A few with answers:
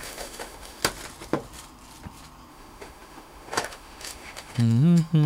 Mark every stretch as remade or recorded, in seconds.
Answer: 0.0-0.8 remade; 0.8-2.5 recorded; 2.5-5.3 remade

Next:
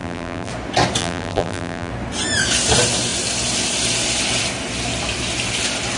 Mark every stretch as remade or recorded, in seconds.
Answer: 0.0-0.5 remade; 0.5-1.0 recorded; 1.0-1.9 remade; 1.9-6.0 recorded

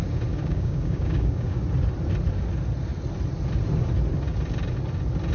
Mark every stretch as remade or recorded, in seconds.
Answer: 0.0-0.4 recorded; 0.4-1.6 remade; 1.6-5.3 recorded

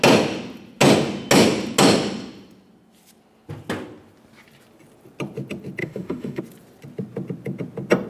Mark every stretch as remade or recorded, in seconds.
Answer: 0.0-5.8 recorded; 5.8-6.4 remade; 6.4-8.1 recorded

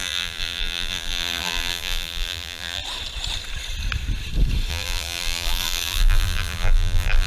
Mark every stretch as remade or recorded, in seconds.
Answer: 0.0-2.8 remade; 2.8-4.7 recorded; 4.7-7.3 remade

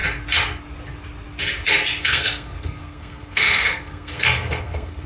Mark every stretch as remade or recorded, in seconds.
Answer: 0.0-2.0 recorded; 2.0-5.1 remade